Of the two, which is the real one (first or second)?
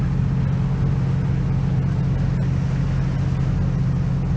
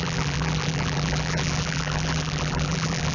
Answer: first